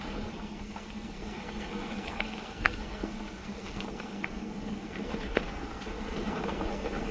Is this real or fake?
fake